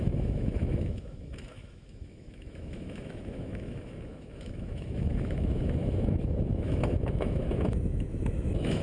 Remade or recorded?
remade